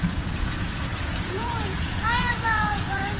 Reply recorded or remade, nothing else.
remade